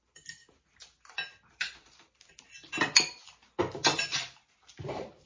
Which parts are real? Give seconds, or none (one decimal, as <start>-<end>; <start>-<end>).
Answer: 0.0-5.3